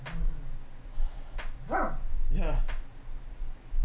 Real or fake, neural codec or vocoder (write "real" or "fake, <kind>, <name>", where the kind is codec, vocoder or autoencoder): real